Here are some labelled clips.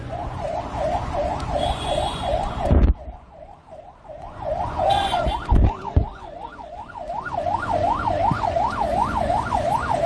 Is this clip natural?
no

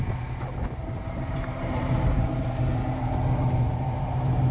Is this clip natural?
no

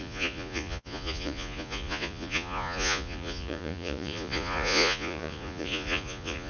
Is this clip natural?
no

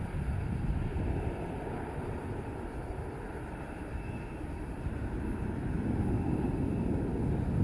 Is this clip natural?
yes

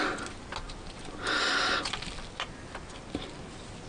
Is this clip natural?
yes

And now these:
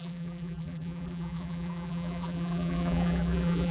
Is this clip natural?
no